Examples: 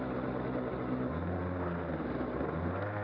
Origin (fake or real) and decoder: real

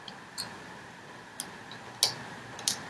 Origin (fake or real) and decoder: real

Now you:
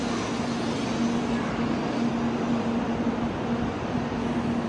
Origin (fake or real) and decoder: real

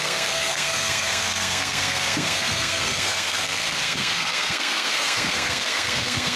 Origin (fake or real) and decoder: fake, codec, SNAC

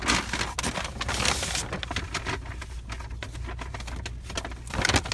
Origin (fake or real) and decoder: real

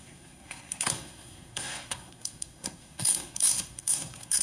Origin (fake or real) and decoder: fake, codec, SNAC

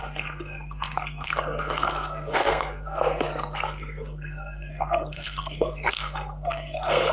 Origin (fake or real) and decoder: fake, codec, SNAC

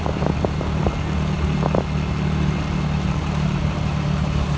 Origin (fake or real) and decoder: real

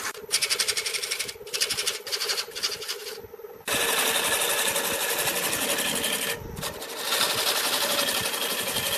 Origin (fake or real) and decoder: real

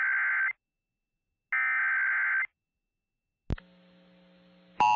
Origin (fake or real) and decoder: real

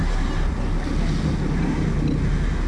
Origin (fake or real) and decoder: real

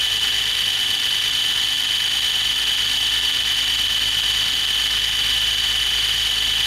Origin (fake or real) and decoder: real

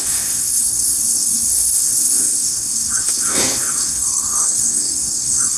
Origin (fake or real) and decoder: fake, codec, SNAC